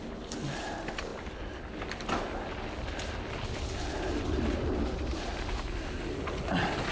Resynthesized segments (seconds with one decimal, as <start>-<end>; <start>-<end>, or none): none